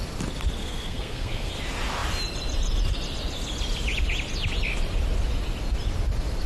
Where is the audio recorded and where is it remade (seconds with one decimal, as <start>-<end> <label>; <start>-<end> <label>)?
0.0-0.6 recorded; 0.6-1.5 remade; 1.5-6.5 recorded